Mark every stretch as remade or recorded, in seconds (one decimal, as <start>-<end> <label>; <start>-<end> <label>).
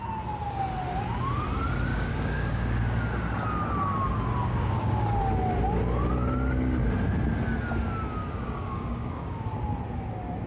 0.0-1.9 recorded; 1.9-2.8 remade; 2.8-4.5 recorded; 4.5-5.2 remade; 5.2-8.2 recorded; 8.2-9.4 remade; 9.4-10.5 recorded